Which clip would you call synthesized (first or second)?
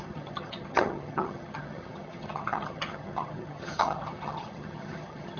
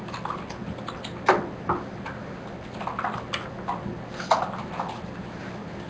first